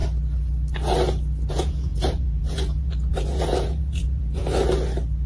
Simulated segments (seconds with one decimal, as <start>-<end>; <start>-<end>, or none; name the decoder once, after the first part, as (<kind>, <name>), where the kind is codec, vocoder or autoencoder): 1.5-4.4 (vocoder, Vocos)